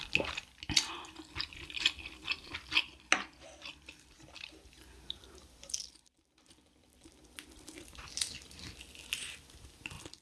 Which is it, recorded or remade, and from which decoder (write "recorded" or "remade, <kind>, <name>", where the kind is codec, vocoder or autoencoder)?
recorded